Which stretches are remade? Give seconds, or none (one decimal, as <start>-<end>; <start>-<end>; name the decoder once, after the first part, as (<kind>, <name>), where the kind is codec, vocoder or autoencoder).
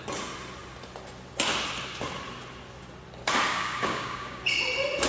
3.5-4.4 (codec, DAC)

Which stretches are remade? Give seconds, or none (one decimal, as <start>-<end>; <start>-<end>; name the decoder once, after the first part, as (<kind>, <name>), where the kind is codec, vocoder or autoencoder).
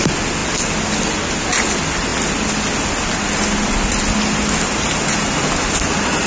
none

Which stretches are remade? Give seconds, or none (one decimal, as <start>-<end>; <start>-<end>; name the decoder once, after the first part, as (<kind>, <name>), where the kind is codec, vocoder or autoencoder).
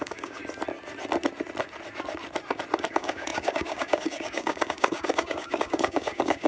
0.0-0.4 (codec, DAC); 2.9-6.5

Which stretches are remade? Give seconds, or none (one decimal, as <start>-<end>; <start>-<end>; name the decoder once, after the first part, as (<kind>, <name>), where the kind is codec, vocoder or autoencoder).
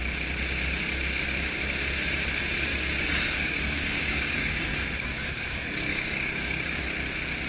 2.7-6.8 (codec, DAC)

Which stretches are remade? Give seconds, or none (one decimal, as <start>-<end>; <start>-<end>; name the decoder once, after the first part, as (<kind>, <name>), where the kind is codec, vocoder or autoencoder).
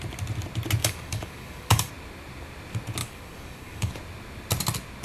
0.8-1.9 (codec, DAC); 3.0-3.9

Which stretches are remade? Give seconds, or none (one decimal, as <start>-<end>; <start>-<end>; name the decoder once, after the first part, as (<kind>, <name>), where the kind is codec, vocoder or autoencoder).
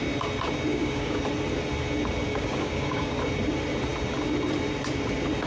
0.7-1.2 (codec, DAC); 2.3-3.2